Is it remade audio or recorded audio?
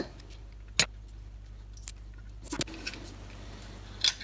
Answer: recorded